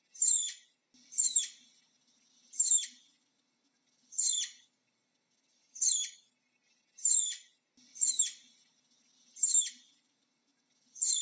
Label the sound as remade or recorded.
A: recorded